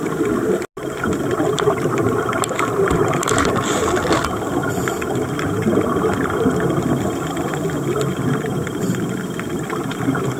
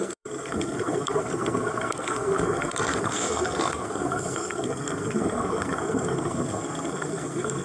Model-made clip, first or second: second